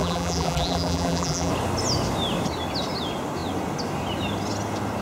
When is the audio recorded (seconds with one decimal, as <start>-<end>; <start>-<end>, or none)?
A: 1.5-5.0